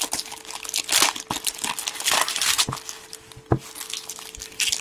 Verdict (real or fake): real